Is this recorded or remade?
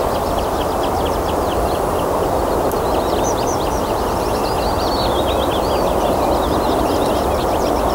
recorded